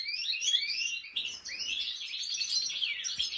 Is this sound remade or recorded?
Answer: recorded